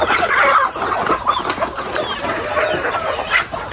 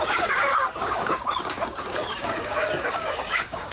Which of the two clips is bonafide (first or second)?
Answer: first